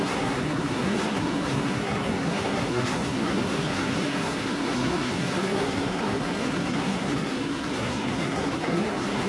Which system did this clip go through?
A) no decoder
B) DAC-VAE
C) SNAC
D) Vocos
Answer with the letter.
C